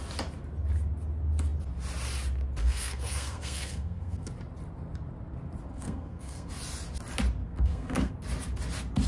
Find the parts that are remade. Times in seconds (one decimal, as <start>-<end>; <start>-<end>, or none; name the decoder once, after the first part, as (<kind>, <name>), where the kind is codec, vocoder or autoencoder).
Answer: 2.6-4.3 (codec, SNAC); 5.7-6.5; 7.4-8.1